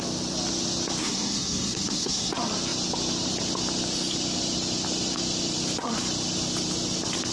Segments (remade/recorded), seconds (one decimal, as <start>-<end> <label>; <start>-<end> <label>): 0.0-1.0 recorded; 1.0-2.3 remade; 2.3-7.3 recorded